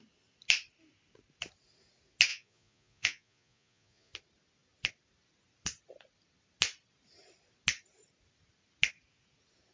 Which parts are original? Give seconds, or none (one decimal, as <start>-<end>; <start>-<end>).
0.0-2.3; 4.1-9.7